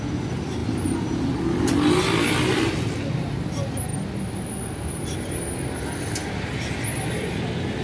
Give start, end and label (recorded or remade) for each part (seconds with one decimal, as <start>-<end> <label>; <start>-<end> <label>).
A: 0.0-7.8 recorded